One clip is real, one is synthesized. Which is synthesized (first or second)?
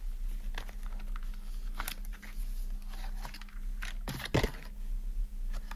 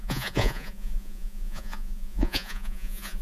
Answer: second